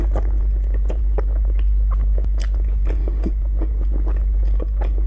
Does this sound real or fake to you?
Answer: real